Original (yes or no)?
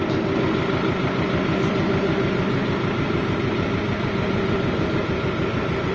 yes